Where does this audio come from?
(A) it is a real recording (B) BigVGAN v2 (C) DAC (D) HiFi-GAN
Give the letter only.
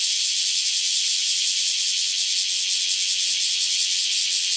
A